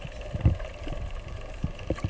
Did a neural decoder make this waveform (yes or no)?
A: no